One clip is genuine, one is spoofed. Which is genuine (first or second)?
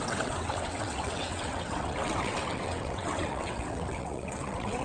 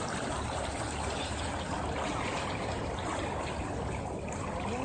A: second